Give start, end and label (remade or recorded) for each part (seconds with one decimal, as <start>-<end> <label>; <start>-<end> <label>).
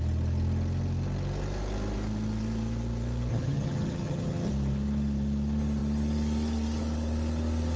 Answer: 0.0-3.3 recorded; 3.3-4.5 remade; 4.5-7.8 recorded